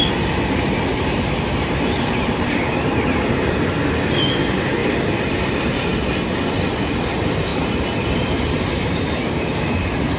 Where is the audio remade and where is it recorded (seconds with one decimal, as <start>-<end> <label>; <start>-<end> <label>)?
0.0-10.2 recorded